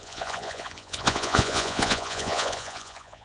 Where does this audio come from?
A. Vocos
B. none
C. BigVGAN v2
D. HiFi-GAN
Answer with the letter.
A